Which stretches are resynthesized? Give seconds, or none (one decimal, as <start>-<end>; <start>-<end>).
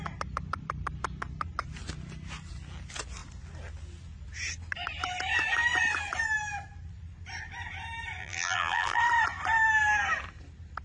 8.2-9.0